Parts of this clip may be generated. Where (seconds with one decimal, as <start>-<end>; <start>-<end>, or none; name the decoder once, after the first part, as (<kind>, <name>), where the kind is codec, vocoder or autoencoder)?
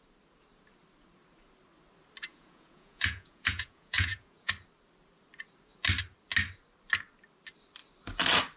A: 2.3-4.5 (vocoder, Vocos)